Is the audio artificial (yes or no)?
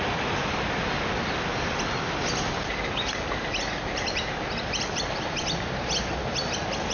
no